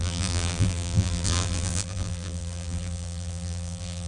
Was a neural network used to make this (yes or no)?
yes